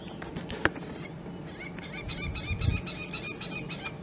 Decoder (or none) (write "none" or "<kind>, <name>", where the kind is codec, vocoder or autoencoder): none